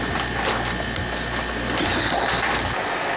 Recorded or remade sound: recorded